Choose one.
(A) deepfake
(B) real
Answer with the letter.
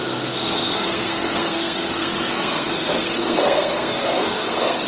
A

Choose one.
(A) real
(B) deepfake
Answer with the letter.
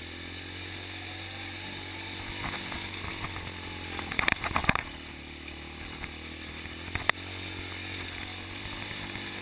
A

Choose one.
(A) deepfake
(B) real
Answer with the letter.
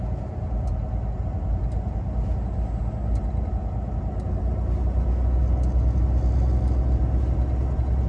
B